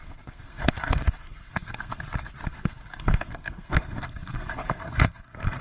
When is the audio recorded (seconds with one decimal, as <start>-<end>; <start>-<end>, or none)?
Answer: 2.0-2.5